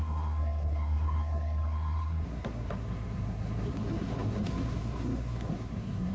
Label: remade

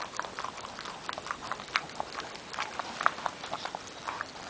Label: recorded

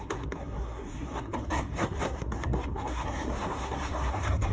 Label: remade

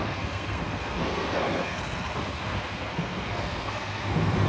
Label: remade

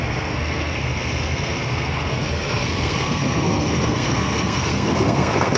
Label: remade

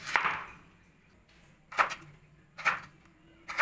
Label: recorded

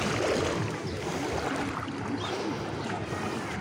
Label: recorded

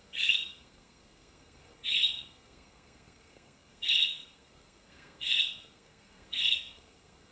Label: remade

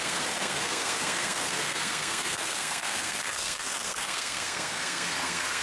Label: remade